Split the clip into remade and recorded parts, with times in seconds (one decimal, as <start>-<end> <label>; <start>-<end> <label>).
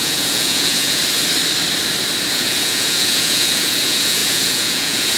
0.0-1.0 remade; 1.0-2.3 recorded; 2.3-5.2 remade